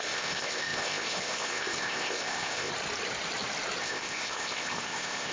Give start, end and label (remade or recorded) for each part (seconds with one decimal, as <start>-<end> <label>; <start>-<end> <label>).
0.0-2.7 remade; 2.7-3.8 recorded; 3.8-5.3 remade